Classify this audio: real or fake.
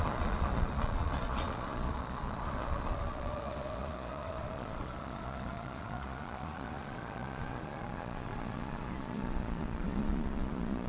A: fake